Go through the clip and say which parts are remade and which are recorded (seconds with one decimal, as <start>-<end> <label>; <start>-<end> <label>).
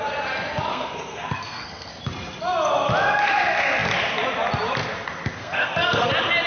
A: 0.0-0.7 recorded; 0.7-1.9 remade; 1.9-5.4 recorded; 5.4-6.1 remade; 6.1-6.5 recorded